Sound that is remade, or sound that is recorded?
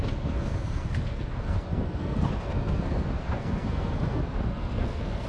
remade